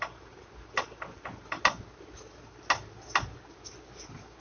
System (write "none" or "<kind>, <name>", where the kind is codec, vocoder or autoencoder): none